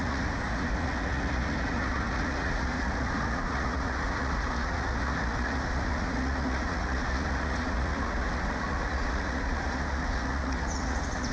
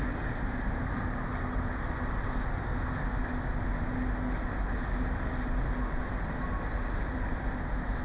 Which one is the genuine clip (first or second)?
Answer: second